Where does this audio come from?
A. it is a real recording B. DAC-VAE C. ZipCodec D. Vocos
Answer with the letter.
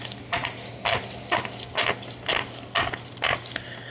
A